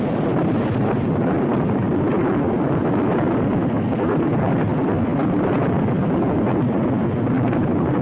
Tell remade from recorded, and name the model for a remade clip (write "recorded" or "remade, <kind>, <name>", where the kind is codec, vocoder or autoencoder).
recorded